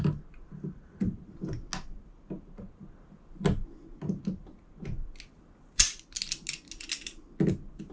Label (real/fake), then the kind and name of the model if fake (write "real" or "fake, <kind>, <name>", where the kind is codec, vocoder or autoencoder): real